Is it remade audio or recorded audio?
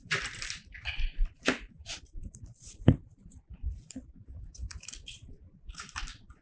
remade